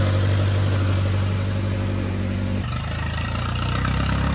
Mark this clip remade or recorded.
recorded